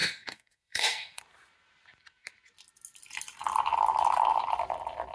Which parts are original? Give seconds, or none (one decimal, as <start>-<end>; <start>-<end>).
1.2-5.1